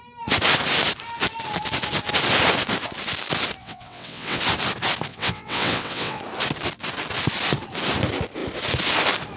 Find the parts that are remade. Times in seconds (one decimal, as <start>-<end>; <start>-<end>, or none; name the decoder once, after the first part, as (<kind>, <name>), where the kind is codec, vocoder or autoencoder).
3.6-4.4 (vocoder, WaveNeXt); 5.1-6.2

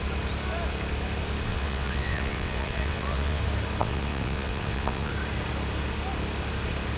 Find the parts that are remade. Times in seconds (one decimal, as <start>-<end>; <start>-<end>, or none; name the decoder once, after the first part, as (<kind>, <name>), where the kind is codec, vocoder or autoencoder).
1.5-3.4 (vocoder, WaveNeXt); 3.8-5.1

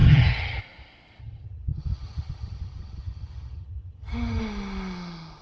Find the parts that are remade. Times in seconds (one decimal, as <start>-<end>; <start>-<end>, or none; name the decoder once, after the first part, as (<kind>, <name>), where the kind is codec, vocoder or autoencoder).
0.0-0.6 (vocoder, HiFi-GAN); 1.2-4.4

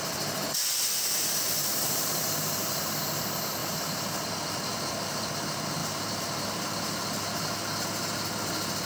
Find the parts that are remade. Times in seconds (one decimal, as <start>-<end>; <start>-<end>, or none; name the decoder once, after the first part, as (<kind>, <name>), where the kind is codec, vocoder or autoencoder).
1.6-3.0 (vocoder, BigVGAN v2); 3.6-5.3; 5.8-6.3

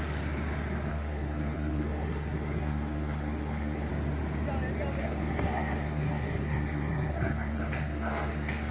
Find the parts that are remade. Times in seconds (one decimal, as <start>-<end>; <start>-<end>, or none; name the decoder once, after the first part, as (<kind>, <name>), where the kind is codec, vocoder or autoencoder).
0.9-3.9 (codec, SNAC); 5.0-8.7

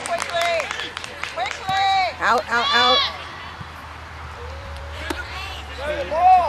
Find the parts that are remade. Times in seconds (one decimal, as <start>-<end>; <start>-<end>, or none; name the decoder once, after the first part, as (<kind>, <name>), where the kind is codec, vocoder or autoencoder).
0.0-6.5 (vocoder, BigVGAN v2)